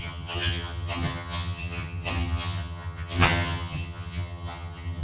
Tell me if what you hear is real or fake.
fake